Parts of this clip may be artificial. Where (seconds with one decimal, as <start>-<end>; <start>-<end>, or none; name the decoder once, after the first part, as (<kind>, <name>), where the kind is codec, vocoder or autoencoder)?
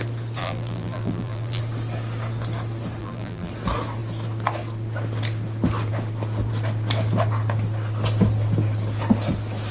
0.4-1.6 (vocoder, BigVGAN v2); 3.0-3.5